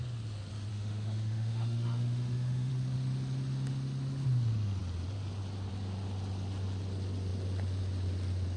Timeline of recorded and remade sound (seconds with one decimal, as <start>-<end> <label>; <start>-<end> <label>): 0.0-0.7 recorded; 0.7-2.7 remade; 2.7-8.6 recorded